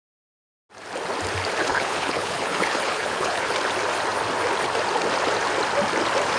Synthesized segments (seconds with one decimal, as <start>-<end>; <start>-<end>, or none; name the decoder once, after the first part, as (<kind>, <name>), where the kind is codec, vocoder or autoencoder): 1.6-3.5 (codec, HILCodec)